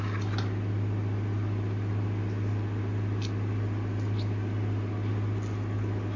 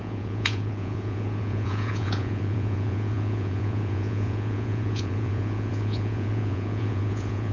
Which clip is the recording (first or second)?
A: first